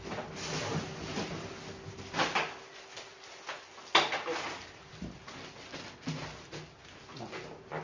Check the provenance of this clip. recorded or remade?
recorded